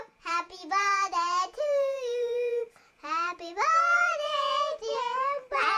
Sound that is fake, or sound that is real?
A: fake